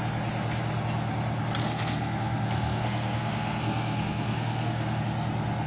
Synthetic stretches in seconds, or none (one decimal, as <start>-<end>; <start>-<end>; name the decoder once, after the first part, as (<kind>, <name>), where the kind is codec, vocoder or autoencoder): 1.6-5.0 (codec, SNAC)